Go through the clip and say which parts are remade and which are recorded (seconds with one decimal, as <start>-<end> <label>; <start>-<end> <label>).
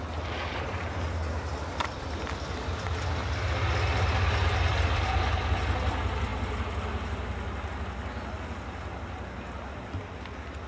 0.0-0.4 recorded; 0.4-2.1 remade; 2.1-4.7 recorded; 4.7-5.2 remade; 5.2-10.7 recorded